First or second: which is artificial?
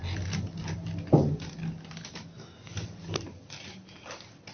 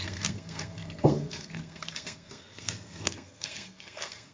second